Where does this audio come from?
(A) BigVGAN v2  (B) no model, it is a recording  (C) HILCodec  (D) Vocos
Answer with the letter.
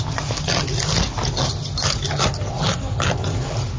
B